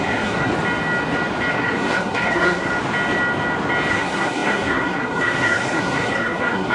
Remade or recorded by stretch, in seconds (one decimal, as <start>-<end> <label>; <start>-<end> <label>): 0.0-0.5 remade; 0.5-1.5 recorded; 1.5-2.7 remade; 2.7-3.9 recorded; 3.9-6.7 remade